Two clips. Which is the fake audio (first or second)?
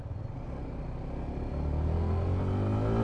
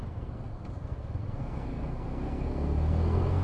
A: second